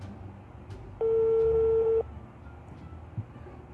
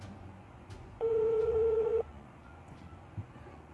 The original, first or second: first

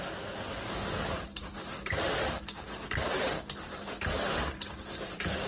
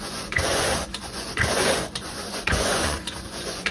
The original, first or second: first